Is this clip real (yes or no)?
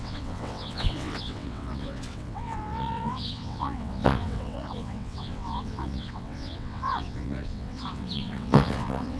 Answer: no